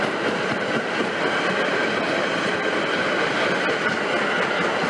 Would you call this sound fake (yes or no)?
no